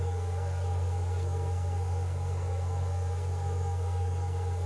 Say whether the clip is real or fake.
fake